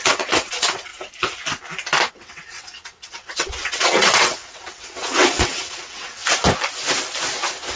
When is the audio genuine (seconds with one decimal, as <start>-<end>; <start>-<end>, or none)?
0.9-2.1; 6.2-7.8